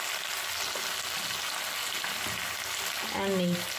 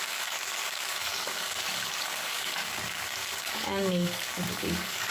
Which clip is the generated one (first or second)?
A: second